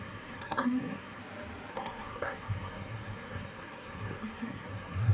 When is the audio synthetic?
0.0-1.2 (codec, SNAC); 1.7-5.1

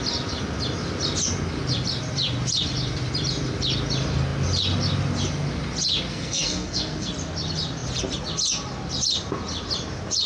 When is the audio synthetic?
6.1-7.1 (codec, SNAC)

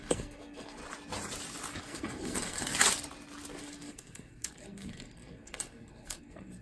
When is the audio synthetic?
0.0-0.8 (codec, SNAC); 1.8-2.7; 3.6-6.6

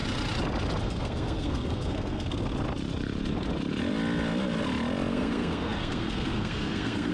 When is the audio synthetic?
0.8-2.5 (codec, SNAC); 5.1-7.1

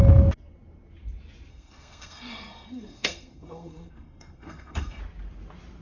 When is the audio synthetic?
1.5-5.0 (codec, SNAC)

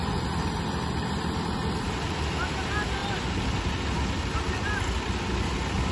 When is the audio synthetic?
none

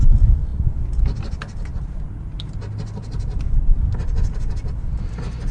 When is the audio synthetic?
none

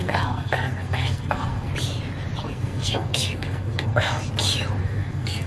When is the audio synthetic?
0.0-1.7 (codec, SNAC); 2.4-4.2; 4.8-5.5